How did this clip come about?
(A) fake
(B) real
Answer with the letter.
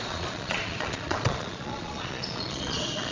A